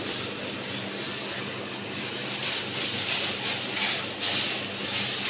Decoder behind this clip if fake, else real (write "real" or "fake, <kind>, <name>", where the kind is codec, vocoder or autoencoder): real